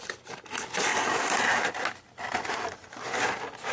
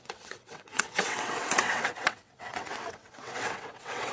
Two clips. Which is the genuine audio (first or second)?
first